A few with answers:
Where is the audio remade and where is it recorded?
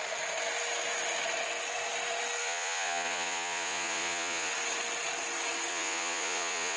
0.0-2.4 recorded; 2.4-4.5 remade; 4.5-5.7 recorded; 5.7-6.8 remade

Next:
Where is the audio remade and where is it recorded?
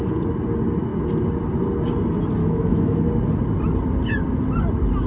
0.0-2.4 recorded; 2.4-3.0 remade; 3.0-5.1 recorded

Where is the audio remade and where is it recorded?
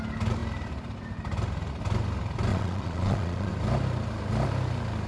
0.0-2.5 recorded; 2.5-3.5 remade; 3.5-5.1 recorded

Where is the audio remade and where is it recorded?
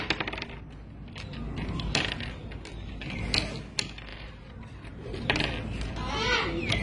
0.0-4.1 recorded; 4.1-5.5 remade; 5.5-6.8 recorded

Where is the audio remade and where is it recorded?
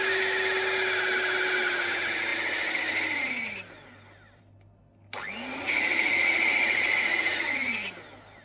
0.0-5.5 recorded; 5.5-7.7 remade; 7.7-8.4 recorded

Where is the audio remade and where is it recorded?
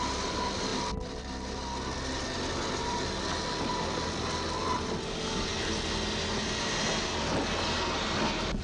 0.0-8.6 recorded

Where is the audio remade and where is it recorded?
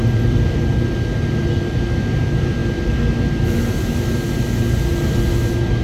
0.0-0.7 remade; 0.7-1.4 recorded; 1.4-2.6 remade; 2.6-5.8 recorded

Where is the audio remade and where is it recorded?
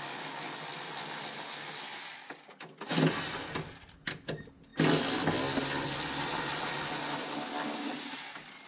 0.0-8.7 recorded